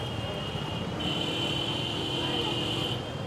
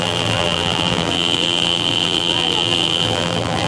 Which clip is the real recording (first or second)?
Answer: first